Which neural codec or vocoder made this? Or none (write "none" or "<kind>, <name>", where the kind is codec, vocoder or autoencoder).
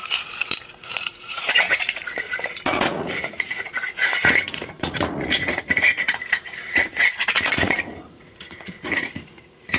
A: vocoder, Vocos